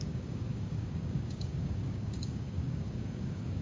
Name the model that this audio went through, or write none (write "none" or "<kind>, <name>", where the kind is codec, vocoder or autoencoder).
codec, DAC